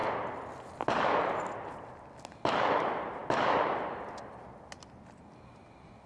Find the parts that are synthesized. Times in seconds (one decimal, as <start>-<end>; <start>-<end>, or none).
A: none